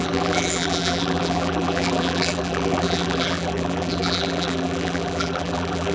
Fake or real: fake